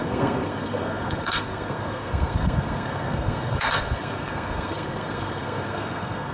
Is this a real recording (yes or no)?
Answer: no